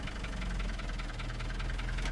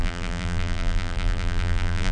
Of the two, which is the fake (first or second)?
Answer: second